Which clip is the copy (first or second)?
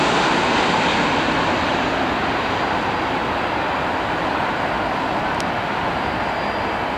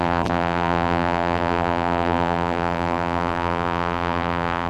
second